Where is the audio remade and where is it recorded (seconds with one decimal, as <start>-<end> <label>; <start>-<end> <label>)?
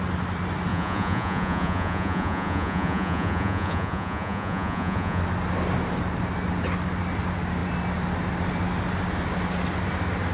0.0-0.7 recorded; 0.7-5.2 remade; 5.2-10.3 recorded